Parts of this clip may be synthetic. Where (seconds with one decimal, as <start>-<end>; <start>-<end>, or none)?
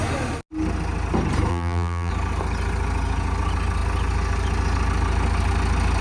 1.5-2.1